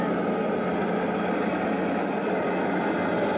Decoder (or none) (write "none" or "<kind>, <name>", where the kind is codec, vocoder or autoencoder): none